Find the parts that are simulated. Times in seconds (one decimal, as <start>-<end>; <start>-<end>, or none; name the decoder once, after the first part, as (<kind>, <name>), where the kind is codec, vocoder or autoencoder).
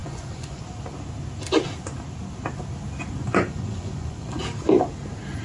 0.0-0.6 (vocoder, Vocos); 3.2-4.4